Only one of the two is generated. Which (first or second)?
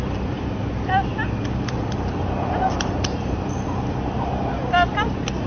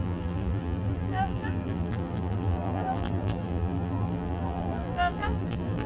second